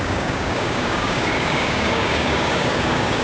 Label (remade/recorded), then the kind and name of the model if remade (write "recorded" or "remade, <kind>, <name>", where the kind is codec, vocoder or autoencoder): remade, codec, DAC